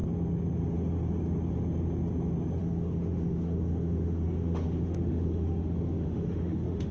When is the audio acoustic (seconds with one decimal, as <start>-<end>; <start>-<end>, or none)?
0.0-2.6

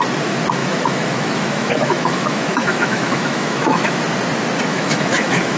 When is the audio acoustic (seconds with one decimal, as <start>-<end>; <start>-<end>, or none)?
0.0-0.6; 4.0-4.7

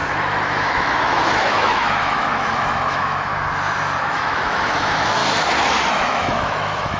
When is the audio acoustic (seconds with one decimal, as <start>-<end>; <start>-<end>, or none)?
3.3-4.1; 5.2-5.9

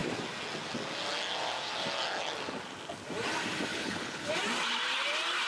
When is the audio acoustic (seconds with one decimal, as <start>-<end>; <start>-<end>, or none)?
0.0-3.7; 4.3-5.5

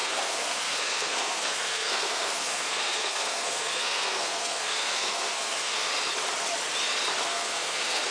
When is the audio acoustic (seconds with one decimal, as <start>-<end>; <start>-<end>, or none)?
5.9-7.2

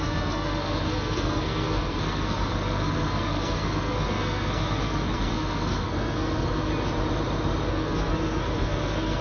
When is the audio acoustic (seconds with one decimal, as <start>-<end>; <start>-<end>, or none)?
6.7-7.7